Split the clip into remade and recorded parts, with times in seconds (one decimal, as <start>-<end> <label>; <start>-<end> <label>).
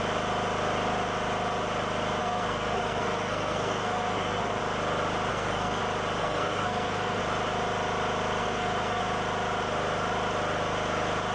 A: 0.0-2.2 recorded; 2.2-4.6 remade; 4.6-5.3 recorded; 5.3-5.8 remade; 5.8-6.2 recorded; 6.2-7.2 remade; 7.2-8.4 recorded; 8.4-9.0 remade; 9.0-11.3 recorded